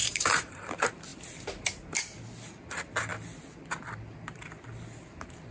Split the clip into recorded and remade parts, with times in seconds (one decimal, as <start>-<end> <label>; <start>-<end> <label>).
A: 0.0-0.6 remade; 0.6-5.5 recorded